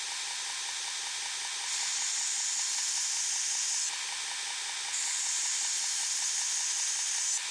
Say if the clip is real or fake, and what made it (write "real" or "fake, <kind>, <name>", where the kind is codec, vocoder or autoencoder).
real